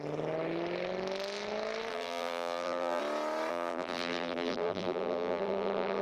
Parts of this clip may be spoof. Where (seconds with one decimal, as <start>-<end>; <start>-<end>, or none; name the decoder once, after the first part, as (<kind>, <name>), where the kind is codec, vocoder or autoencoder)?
1.9-3.0 (vocoder, BigVGAN v2); 3.5-6.0